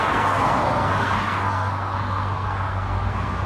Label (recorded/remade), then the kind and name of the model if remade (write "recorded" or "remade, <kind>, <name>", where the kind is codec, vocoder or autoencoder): remade, codec, SNAC